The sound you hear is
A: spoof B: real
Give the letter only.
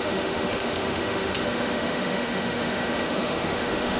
A